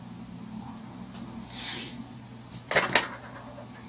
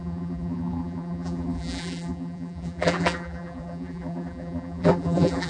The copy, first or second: second